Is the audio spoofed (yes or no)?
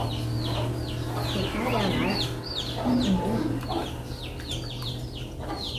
no